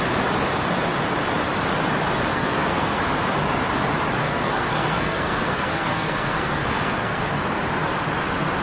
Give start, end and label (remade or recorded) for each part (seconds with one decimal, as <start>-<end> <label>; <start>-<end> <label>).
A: 0.0-2.3 recorded; 2.3-3.0 remade; 3.0-4.2 recorded; 4.2-7.3 remade; 7.3-8.6 recorded